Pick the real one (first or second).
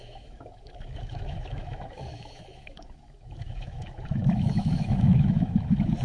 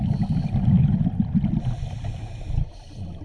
second